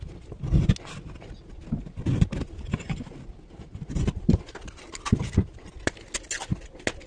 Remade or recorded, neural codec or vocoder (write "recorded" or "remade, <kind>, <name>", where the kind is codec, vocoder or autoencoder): recorded